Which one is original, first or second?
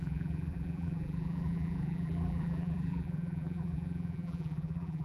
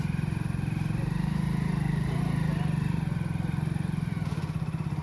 second